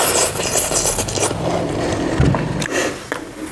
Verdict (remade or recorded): recorded